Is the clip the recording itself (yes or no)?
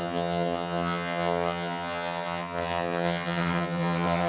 no